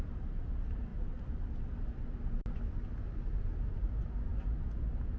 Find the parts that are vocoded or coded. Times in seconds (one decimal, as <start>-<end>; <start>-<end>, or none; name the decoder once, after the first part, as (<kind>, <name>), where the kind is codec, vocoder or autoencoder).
none